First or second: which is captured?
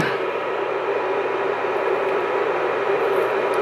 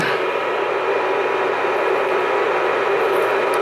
second